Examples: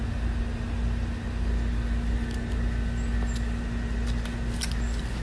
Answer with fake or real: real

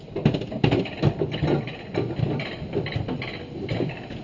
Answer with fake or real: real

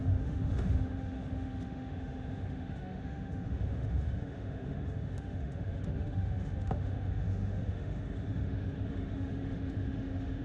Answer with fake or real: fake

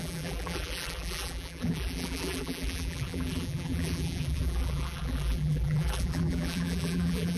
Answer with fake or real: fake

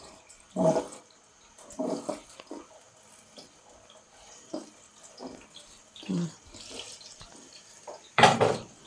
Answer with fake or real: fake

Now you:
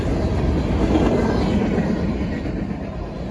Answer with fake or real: real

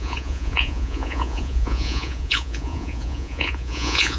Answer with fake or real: fake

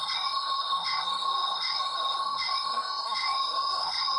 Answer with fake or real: fake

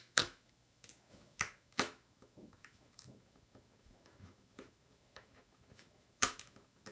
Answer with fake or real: fake